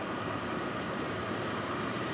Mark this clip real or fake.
fake